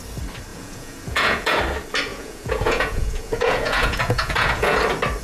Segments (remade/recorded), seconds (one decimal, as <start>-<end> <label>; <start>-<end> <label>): 0.0-0.5 recorded; 0.5-1.6 remade; 1.6-2.1 recorded; 2.1-4.8 remade; 4.8-5.2 recorded